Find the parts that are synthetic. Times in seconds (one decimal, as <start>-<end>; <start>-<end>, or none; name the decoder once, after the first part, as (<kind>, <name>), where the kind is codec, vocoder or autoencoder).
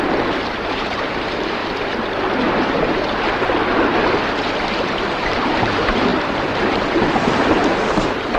0.0-1.6 (vocoder, BigVGAN v2); 4.8-8.4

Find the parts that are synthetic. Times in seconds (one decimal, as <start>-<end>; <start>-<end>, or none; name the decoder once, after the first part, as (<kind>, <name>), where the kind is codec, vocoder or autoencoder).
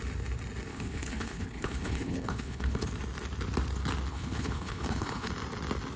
0.7-2.9 (codec, HILCodec); 4.1-5.3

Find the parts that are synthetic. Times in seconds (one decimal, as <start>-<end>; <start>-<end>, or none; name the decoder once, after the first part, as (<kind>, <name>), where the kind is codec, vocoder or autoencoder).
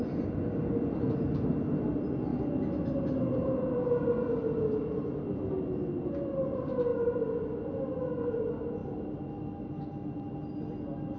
6.9-7.6 (vocoder, BigVGAN v2)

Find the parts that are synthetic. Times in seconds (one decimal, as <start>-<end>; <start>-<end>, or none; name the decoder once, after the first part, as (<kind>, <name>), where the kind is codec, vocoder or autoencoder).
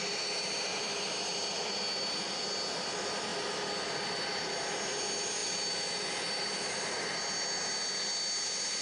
none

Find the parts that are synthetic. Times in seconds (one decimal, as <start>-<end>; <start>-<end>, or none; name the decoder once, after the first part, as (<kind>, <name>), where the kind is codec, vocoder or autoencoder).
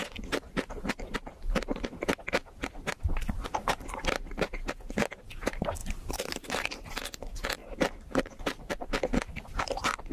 5.8-6.9 (vocoder, BigVGAN v2); 7.6-9.2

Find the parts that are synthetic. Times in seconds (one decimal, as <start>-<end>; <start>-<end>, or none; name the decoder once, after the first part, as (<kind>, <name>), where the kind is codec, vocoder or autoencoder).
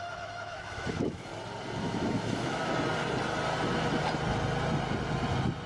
0.0-1.3 (autoencoder, DAC-VAE); 1.8-2.7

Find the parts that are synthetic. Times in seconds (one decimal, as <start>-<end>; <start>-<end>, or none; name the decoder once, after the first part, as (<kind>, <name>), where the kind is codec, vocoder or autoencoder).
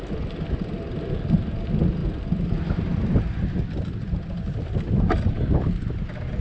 none